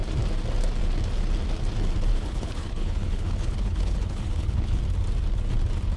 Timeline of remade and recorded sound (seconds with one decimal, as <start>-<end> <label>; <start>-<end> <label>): 0.0-2.1 recorded; 2.1-4.8 remade; 4.8-6.0 recorded